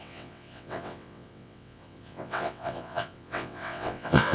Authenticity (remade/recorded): remade